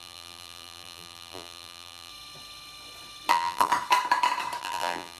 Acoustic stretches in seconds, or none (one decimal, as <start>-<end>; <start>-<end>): 2.1-3.3; 3.7-4.6